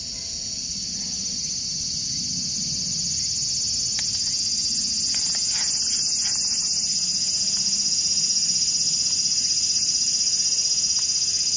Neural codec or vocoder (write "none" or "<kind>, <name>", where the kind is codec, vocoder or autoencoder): none